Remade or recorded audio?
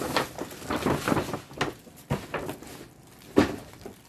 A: recorded